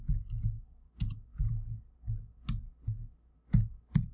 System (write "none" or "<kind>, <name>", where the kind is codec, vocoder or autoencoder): none